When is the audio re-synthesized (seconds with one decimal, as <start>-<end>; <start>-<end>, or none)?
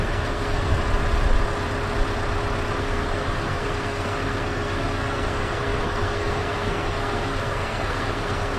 0.0-0.8; 2.8-8.6